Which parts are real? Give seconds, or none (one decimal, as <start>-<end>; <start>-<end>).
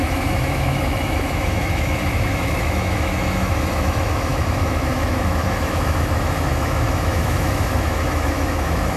none